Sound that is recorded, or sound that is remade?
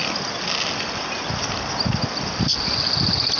recorded